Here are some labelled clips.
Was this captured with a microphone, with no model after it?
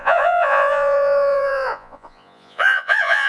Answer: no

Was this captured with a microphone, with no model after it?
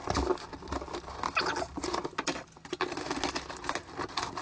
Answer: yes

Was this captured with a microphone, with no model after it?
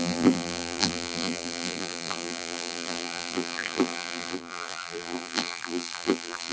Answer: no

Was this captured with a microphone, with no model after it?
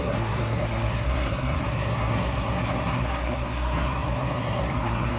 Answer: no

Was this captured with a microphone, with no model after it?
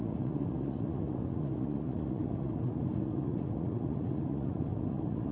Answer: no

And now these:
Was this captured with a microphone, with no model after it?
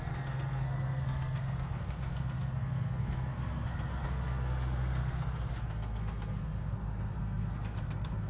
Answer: no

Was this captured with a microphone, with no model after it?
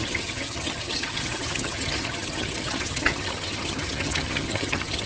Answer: no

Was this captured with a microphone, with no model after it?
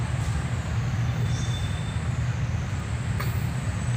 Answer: yes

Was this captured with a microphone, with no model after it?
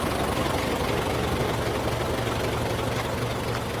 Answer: yes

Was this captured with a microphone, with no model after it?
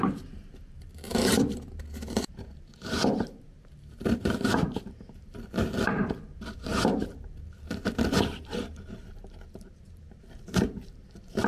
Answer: no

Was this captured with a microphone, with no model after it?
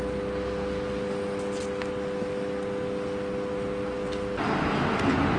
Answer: yes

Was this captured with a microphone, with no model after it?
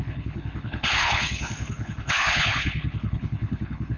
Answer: no